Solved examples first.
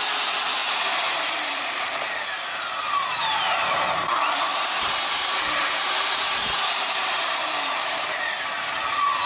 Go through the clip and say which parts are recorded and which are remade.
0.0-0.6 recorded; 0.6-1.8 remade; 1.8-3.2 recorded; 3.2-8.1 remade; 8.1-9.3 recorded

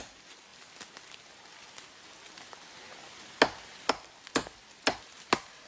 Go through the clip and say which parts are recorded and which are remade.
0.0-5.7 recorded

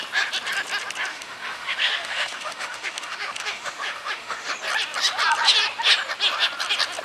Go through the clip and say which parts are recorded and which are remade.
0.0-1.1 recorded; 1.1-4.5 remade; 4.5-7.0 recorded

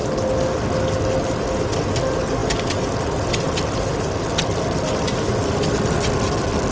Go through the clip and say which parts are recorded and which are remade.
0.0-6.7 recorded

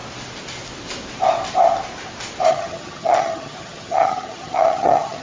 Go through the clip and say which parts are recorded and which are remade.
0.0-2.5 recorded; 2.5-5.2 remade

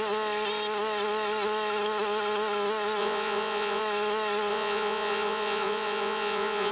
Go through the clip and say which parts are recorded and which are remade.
0.0-3.0 recorded; 3.0-3.8 remade; 3.8-4.5 recorded; 4.5-6.7 remade

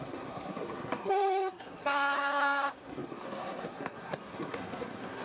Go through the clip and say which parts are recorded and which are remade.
0.0-5.2 remade

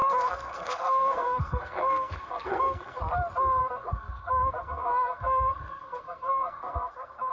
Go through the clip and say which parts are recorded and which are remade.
0.0-3.0 remade; 3.0-3.6 recorded; 3.6-7.3 remade